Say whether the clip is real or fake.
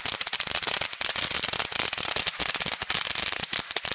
real